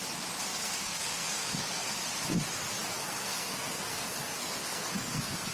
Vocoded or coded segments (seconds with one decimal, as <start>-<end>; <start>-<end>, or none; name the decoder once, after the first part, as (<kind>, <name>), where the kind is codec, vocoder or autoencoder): 0.5-2.0 (codec, SNAC); 2.9-5.5